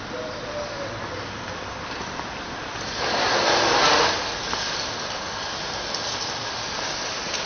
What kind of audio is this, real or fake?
real